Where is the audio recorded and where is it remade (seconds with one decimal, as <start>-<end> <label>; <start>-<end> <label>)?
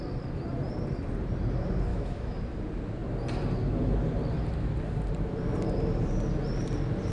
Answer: 0.0-1.9 recorded; 1.9-2.4 remade; 2.4-7.1 recorded